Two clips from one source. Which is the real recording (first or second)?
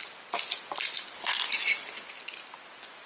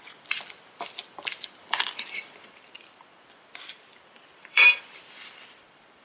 first